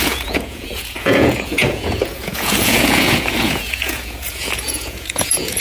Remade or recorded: remade